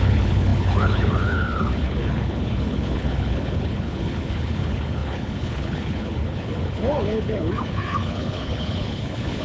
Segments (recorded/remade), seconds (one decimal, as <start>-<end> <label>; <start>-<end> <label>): 0.0-9.4 remade